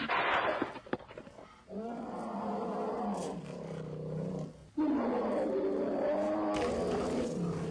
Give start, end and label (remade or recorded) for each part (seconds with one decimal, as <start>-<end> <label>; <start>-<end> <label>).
0.0-7.7 recorded